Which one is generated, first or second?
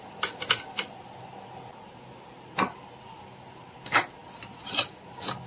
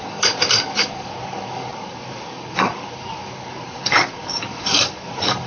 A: second